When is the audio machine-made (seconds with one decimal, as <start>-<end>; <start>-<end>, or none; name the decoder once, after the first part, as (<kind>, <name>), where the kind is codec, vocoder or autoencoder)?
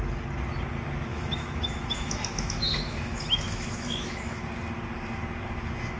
1.1-4.4 (autoencoder, DAC-VAE)